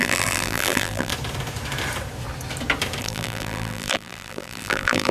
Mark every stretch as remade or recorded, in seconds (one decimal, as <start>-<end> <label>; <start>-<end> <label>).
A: 0.0-1.1 remade; 1.1-3.0 recorded; 3.0-5.1 remade

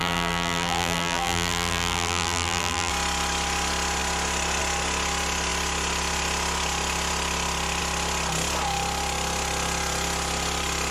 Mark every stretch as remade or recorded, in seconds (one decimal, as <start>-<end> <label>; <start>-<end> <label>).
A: 0.0-2.9 remade; 2.9-10.9 recorded